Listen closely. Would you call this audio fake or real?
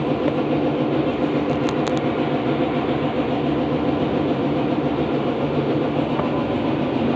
real